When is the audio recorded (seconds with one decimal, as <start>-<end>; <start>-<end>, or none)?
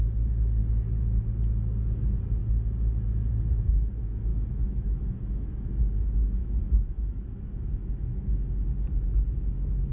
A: 0.0-4.3; 5.7-6.4; 7.7-9.9